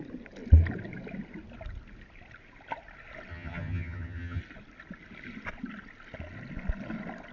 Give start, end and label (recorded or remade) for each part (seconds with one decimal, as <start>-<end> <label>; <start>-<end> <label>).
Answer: 0.0-3.3 recorded; 3.3-4.4 remade; 4.4-7.3 recorded